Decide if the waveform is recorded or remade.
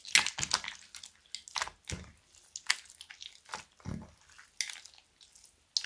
recorded